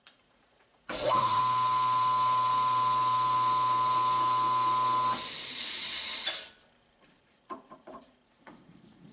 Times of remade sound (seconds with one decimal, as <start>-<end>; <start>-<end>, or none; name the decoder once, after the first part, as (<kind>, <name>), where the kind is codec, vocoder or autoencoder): 0.0-1.4 (vocoder, Vocos); 5.6-6.1; 7.2-9.1